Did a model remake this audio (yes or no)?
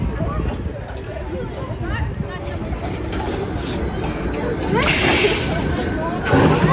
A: no